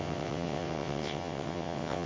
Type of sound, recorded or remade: remade